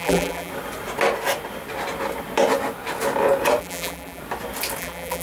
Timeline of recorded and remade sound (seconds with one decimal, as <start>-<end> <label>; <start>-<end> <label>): 0.0-0.5 remade; 0.5-3.6 recorded; 3.6-4.2 remade; 4.2-4.8 recorded; 4.8-5.2 remade